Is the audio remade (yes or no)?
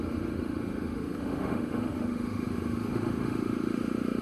yes